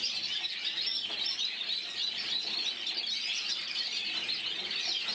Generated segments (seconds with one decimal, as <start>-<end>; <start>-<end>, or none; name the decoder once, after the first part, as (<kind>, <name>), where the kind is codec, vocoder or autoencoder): none